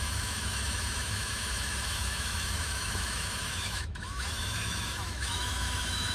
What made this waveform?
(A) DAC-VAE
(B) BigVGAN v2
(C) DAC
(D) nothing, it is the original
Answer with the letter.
A